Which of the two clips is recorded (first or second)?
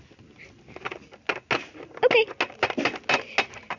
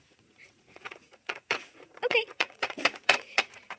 first